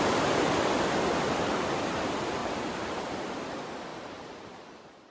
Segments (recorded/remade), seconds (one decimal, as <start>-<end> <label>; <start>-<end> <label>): 0.0-2.4 recorded; 2.4-3.1 remade; 3.1-3.9 recorded; 3.9-4.6 remade; 4.6-5.1 recorded